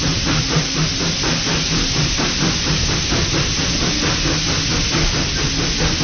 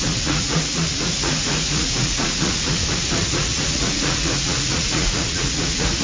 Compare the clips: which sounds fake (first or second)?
second